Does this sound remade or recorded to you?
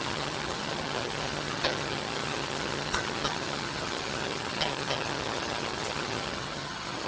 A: remade